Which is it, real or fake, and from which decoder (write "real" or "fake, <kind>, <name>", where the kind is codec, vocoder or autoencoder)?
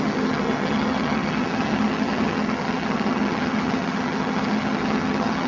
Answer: fake, vocoder, HiFi-GAN